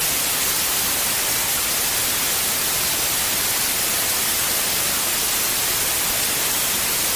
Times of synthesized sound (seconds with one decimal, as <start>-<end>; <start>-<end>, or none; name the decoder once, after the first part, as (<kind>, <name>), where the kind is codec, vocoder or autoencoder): none